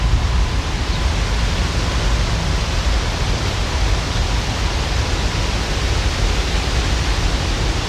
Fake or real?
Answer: real